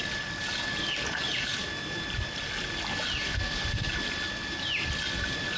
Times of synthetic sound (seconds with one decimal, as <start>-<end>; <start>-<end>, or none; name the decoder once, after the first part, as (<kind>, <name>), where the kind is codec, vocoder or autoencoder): none